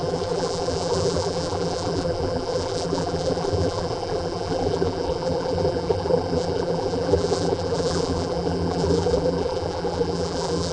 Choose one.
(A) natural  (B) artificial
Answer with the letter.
B